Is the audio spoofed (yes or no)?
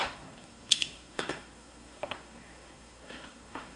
yes